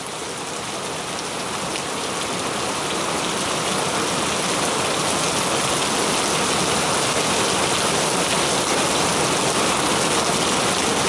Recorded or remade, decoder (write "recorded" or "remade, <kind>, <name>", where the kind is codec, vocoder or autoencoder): recorded